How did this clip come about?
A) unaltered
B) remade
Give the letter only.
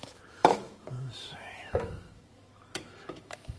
B